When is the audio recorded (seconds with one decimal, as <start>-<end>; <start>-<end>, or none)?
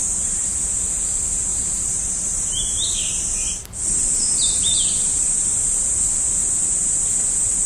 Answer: 0.5-1.5; 5.9-7.7